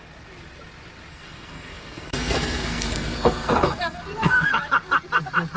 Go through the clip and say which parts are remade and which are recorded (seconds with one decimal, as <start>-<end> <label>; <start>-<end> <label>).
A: 0.0-1.1 recorded; 1.1-4.5 remade; 4.5-5.6 recorded